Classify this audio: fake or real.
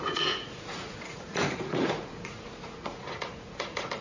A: fake